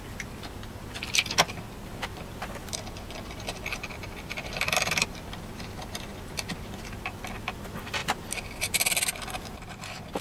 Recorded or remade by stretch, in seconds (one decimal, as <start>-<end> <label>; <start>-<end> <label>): 0.0-8.0 remade; 8.0-9.2 recorded; 9.2-10.2 remade